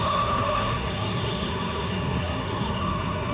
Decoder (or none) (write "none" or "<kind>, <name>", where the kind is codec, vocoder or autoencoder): codec, SNAC